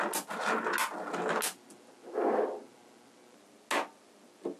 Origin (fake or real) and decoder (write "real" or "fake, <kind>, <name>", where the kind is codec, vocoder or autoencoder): real